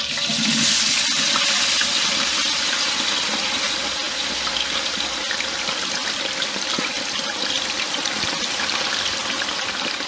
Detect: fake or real real